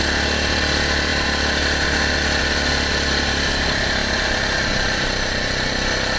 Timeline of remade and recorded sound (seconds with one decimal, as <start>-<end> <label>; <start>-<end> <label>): 0.0-6.2 recorded